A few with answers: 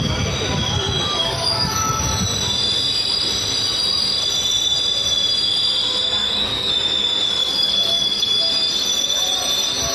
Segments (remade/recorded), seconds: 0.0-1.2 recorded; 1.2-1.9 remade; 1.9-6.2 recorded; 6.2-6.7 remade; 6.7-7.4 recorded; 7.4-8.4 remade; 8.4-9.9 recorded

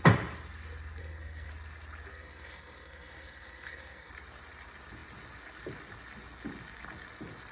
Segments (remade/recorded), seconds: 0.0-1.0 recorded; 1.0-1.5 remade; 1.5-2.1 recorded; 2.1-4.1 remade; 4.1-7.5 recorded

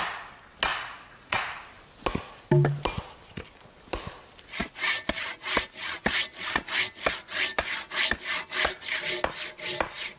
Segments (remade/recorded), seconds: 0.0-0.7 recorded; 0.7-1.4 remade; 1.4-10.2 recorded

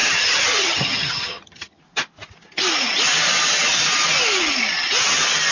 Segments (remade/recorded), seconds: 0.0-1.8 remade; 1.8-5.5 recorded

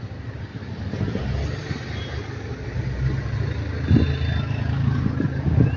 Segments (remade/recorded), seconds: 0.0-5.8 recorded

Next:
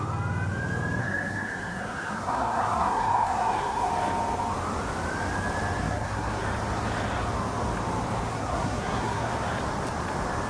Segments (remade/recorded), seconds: 0.0-1.0 recorded; 1.0-3.9 remade; 3.9-5.8 recorded; 5.8-6.4 remade; 6.4-8.3 recorded; 8.3-9.3 remade; 9.3-10.5 recorded

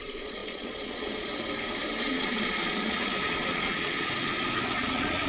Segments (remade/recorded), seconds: 0.0-1.3 remade; 1.3-2.1 recorded; 2.1-5.3 remade

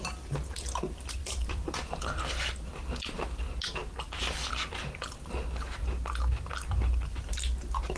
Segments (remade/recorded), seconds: 0.0-1.2 recorded; 1.2-2.2 remade; 2.2-8.0 recorded